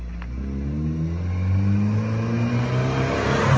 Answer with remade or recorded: recorded